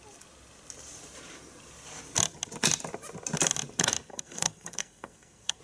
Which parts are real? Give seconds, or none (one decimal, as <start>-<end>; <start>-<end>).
0.0-4.1